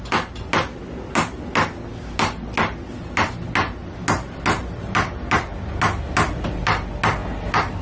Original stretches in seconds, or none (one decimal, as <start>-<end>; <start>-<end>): 0.0-7.8